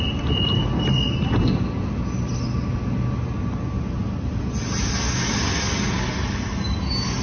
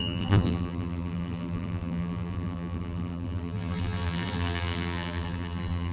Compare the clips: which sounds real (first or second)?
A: first